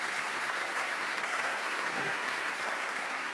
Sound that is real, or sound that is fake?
fake